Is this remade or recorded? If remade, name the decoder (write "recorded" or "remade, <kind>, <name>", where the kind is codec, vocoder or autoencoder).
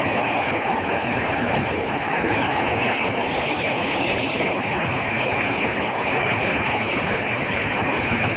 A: remade, codec, HILCodec